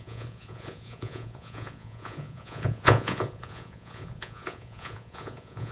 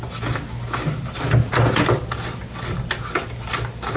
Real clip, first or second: second